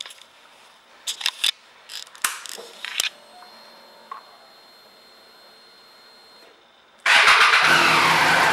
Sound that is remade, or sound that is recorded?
recorded